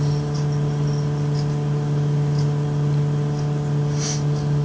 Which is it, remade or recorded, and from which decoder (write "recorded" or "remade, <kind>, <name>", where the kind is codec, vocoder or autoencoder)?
recorded